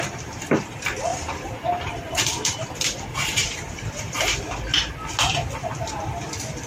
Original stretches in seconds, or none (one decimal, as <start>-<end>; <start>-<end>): 0.0-1.1; 4.4-6.7